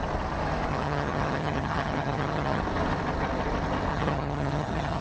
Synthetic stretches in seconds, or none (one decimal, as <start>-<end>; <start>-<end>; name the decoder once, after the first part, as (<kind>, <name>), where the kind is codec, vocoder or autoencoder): 0.7-2.6 (vocoder, HiFi-GAN); 3.9-5.0